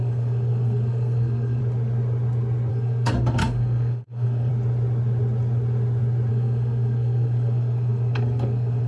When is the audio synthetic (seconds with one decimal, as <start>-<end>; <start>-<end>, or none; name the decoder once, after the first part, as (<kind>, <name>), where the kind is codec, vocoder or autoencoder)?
0.0-1.6 (codec, SNAC); 2.7-4.5; 6.3-8.9